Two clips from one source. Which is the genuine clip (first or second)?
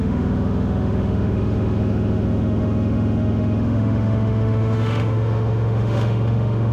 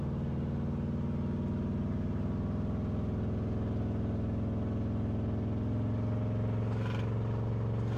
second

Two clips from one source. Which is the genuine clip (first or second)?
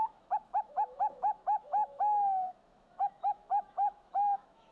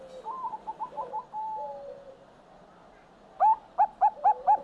second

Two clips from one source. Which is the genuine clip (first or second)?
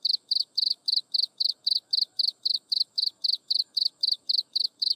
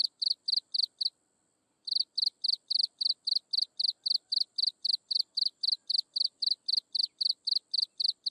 second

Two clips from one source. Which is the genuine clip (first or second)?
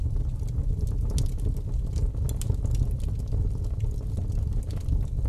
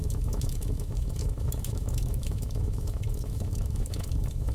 first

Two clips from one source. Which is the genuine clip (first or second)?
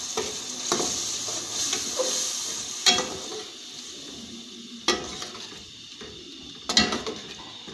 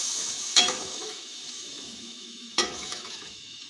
first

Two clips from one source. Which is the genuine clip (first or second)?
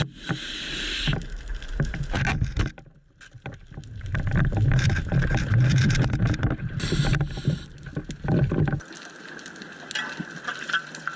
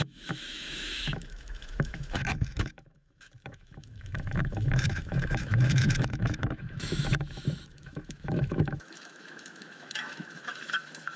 first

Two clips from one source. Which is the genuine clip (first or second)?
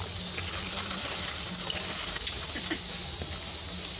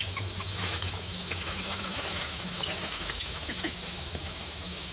first